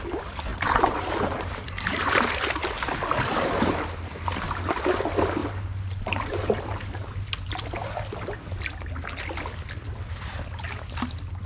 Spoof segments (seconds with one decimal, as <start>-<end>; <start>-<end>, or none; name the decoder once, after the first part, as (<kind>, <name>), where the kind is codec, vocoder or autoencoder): 0.5-2.4 (vocoder, BigVGAN v2); 5.4-7.1